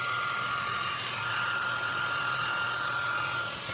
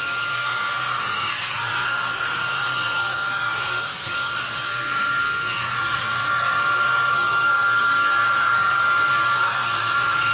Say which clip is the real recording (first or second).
first